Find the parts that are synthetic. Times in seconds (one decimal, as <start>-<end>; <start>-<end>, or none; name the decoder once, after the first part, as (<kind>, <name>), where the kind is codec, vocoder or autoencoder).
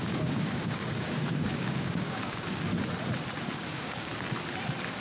0.0-2.7 (codec, DAC); 3.4-4.1